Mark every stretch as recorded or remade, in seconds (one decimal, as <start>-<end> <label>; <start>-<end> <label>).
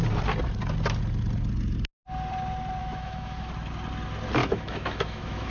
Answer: 0.0-2.8 recorded; 2.8-3.5 remade; 3.5-4.4 recorded; 4.4-5.5 remade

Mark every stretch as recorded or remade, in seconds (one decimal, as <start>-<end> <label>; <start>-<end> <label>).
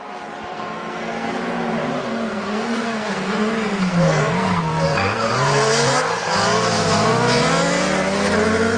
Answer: 0.0-0.5 recorded; 0.5-1.3 remade; 1.3-2.1 recorded; 2.1-5.3 remade; 5.3-8.8 recorded